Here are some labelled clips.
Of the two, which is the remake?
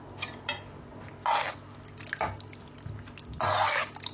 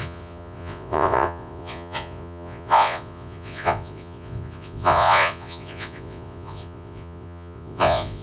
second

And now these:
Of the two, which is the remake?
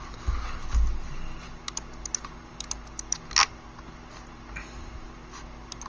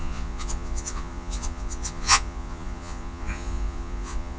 second